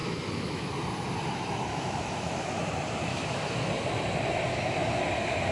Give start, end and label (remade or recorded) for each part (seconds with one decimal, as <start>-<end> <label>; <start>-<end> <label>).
0.0-0.7 remade; 0.7-1.7 recorded; 1.7-2.6 remade; 2.6-3.1 recorded; 3.1-3.7 remade; 3.7-4.5 recorded; 4.5-5.0 remade; 5.0-5.5 recorded